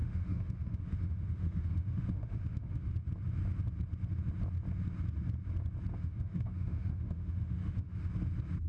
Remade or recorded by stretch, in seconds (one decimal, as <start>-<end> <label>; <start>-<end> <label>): 0.0-2.9 remade; 2.9-5.9 recorded; 5.9-8.1 remade; 8.1-8.7 recorded

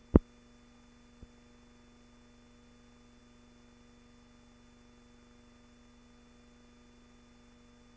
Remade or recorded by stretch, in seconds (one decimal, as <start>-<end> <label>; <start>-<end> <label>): 0.0-8.0 recorded